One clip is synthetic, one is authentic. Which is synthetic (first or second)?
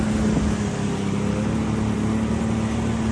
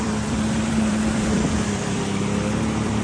second